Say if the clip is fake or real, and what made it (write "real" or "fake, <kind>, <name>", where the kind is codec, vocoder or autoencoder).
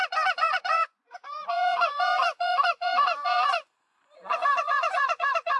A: fake, vocoder, Vocos